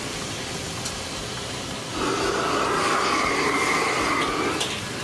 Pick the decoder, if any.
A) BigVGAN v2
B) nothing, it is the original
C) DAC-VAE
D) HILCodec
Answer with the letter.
B